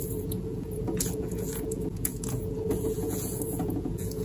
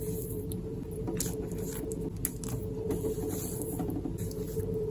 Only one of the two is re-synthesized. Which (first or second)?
first